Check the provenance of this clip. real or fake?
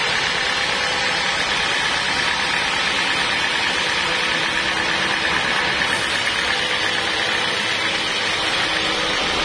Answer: real